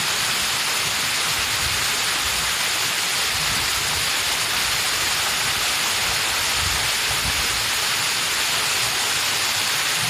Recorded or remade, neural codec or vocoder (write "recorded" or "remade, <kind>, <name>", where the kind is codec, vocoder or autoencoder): recorded